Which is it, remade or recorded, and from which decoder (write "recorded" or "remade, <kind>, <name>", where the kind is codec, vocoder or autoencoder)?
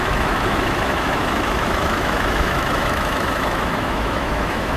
remade, autoencoder, DAC-VAE